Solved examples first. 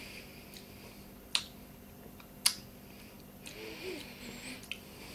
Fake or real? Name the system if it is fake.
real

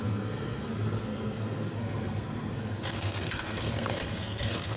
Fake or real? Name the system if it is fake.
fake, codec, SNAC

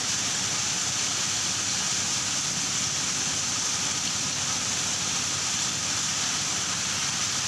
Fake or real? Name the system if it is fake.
real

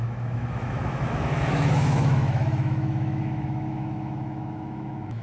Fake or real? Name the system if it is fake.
fake, autoencoder, DAC-VAE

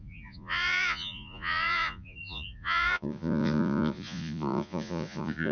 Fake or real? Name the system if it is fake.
fake, vocoder, Vocos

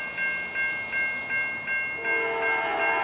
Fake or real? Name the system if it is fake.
real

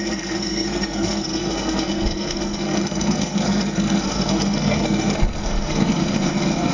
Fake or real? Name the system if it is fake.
fake, codec, SNAC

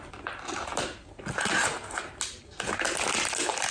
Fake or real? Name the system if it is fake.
real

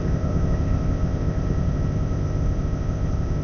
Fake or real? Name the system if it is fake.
fake, codec, ZipCodec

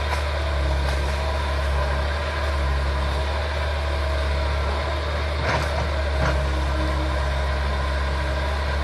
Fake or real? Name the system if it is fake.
real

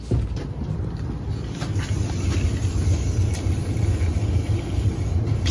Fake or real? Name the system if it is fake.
real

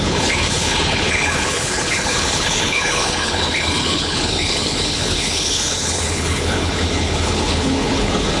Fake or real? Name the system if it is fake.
fake, codec, HILCodec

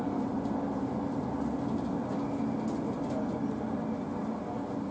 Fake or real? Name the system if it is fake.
real